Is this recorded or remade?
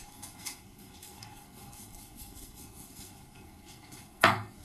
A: remade